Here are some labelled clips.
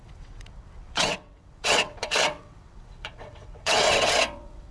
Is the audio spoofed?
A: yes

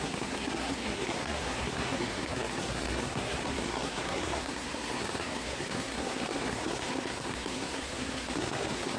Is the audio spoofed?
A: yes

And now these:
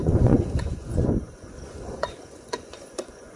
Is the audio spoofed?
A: yes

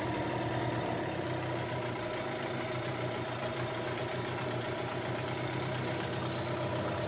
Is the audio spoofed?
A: no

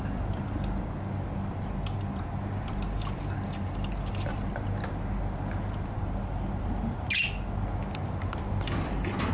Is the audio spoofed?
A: no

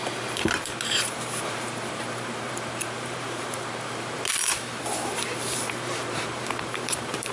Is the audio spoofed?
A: yes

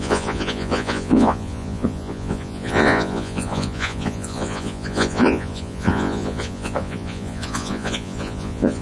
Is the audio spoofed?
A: yes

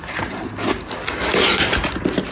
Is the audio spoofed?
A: no